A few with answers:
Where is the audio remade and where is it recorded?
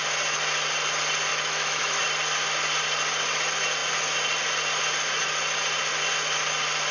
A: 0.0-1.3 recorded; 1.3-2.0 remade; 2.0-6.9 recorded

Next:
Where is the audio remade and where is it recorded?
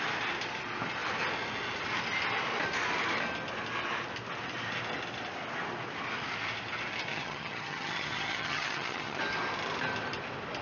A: 0.0-7.1 recorded; 7.1-9.2 remade; 9.2-10.6 recorded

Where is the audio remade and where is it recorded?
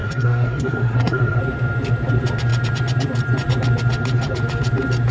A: 0.0-1.4 remade; 1.4-5.1 recorded